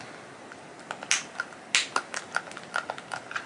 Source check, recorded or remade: recorded